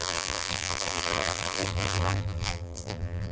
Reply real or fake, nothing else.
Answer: fake